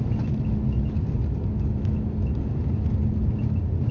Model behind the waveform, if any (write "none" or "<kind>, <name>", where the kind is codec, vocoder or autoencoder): none